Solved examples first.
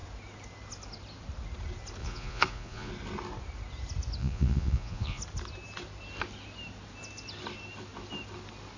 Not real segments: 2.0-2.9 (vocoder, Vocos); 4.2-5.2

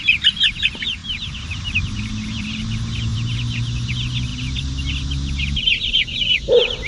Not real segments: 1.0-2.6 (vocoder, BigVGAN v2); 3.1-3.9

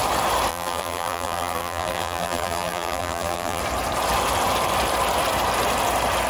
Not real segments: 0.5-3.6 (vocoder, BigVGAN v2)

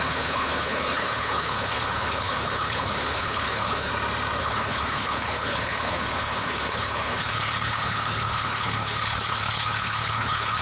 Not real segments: 0.0-3.9 (codec, HILCodec); 4.4-10.6